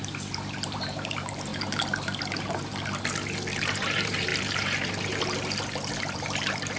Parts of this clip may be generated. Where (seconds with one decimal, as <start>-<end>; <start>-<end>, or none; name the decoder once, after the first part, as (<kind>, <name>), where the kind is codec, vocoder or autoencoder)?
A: 0.0-1.5 (vocoder, BigVGAN v2); 2.2-2.7; 3.6-6.8